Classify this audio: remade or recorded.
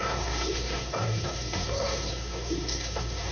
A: remade